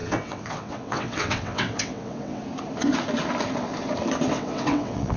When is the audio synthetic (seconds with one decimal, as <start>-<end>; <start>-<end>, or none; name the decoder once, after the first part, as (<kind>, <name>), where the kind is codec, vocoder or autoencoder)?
0.0-2.4 (vocoder, WaveNeXt); 4.3-5.2